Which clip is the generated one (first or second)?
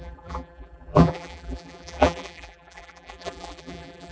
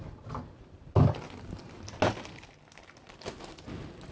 first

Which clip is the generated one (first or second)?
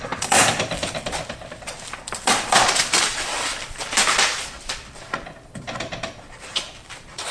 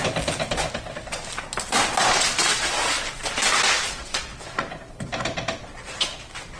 first